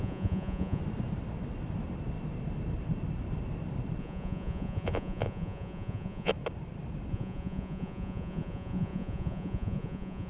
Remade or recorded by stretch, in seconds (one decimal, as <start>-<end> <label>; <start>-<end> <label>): 0.0-0.8 remade; 0.8-4.0 recorded; 4.0-6.3 remade; 6.3-7.1 recorded; 7.1-10.3 remade